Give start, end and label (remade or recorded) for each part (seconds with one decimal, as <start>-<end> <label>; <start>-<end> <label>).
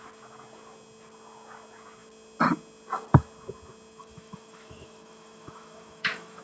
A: 0.0-4.0 recorded; 4.0-6.4 remade